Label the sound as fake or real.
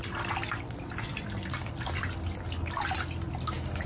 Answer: real